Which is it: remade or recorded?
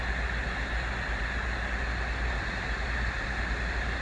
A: recorded